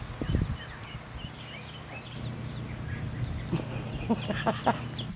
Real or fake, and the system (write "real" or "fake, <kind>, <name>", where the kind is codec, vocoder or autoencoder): real